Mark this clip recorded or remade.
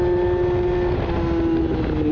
recorded